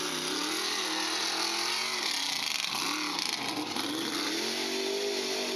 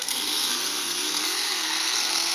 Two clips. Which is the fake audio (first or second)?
second